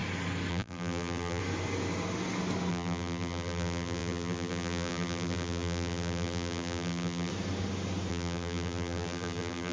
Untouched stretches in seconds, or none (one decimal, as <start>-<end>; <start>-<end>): 0.0-0.5; 1.4-2.7; 7.3-8.1